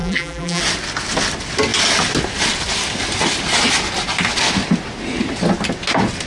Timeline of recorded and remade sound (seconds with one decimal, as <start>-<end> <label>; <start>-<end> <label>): 0.0-0.6 remade; 0.6-6.3 recorded